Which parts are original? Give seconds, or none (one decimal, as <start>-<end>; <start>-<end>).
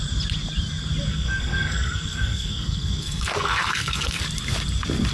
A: 0.0-1.1; 4.2-5.1